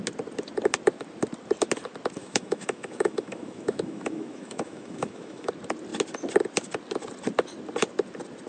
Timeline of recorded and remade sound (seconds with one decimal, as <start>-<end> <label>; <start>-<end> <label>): 0.0-2.2 recorded; 2.2-5.5 remade; 5.5-8.5 recorded